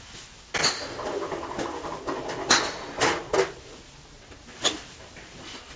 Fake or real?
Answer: real